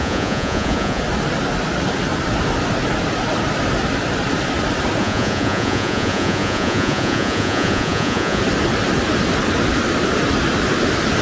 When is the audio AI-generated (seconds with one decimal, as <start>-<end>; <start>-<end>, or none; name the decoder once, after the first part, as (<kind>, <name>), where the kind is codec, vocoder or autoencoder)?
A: 0.0-1.0 (vocoder, Vocos); 5.0-8.4